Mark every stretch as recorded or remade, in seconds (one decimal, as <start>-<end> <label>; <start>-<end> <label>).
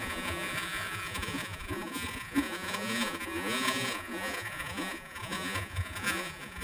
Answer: 0.0-6.6 remade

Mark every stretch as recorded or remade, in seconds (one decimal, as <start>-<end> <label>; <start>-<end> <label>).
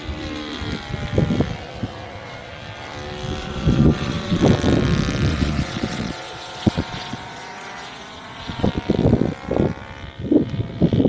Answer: 0.0-3.4 recorded; 3.4-4.4 remade; 4.4-5.3 recorded; 5.3-8.7 remade; 8.7-11.1 recorded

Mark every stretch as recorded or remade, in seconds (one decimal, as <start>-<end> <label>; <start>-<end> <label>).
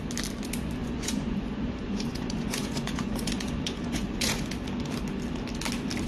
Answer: 0.0-0.8 recorded; 0.8-4.5 remade; 4.5-6.1 recorded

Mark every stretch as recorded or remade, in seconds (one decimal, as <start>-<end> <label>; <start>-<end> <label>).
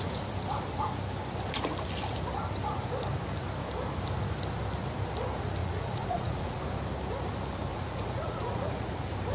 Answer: 0.0-5.6 recorded; 5.6-6.6 remade; 6.6-7.7 recorded; 7.7-8.9 remade; 8.9-9.3 recorded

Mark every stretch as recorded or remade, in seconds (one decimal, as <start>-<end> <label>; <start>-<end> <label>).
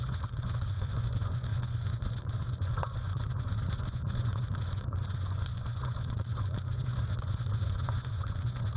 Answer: 0.0-8.8 remade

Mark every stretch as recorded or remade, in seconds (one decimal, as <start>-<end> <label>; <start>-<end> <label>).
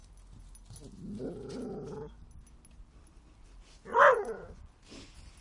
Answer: 0.0-3.9 recorded; 3.9-4.7 remade; 4.7-5.4 recorded